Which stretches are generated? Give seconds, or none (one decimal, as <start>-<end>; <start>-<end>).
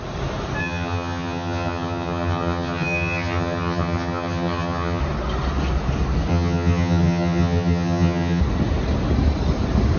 0.6-5.0; 6.3-8.4